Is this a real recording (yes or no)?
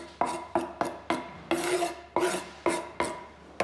yes